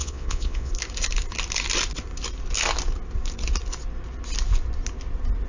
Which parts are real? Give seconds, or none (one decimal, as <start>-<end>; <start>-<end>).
0.7-5.5